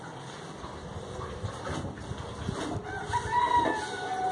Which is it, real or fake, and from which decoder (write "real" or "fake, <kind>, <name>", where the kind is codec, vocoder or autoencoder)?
real